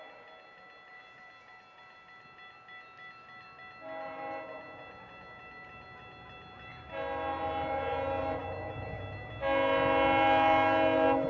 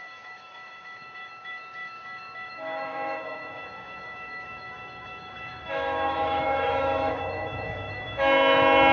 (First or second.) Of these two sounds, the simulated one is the second